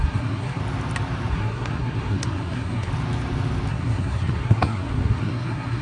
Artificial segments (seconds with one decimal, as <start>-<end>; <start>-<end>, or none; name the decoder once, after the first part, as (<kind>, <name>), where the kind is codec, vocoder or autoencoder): 0.0-0.6 (codec, SNAC); 1.3-2.9; 3.7-5.8